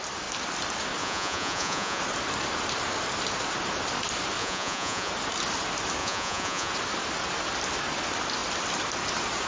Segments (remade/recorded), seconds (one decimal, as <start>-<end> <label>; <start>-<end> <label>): 0.0-1.0 recorded; 1.0-2.0 remade; 2.0-4.4 recorded; 4.4-5.1 remade; 5.1-6.0 recorded; 6.0-6.7 remade; 6.7-9.5 recorded